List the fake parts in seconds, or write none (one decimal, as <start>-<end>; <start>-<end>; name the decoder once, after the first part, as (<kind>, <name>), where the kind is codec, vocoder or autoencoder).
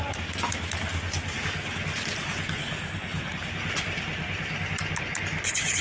2.6-3.3 (codec, HILCodec)